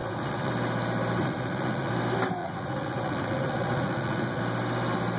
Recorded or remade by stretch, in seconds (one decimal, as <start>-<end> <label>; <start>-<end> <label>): 0.0-0.5 remade; 0.5-1.2 recorded; 1.2-1.9 remade; 1.9-2.4 recorded; 2.4-4.4 remade; 4.4-5.2 recorded